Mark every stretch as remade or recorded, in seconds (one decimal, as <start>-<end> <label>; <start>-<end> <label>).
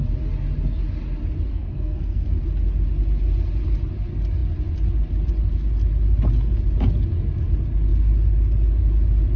0.0-1.5 recorded; 1.5-2.4 remade; 2.4-9.4 recorded